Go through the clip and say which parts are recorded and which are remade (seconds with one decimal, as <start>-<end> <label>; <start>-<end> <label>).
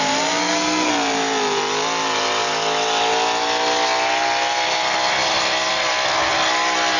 0.0-0.4 recorded; 0.4-0.9 remade; 0.9-7.0 recorded